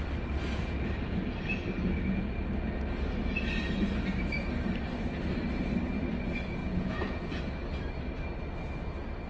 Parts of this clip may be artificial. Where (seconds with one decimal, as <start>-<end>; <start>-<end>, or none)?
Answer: 6.6-7.4